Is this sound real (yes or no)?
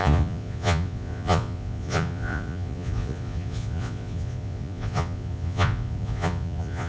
no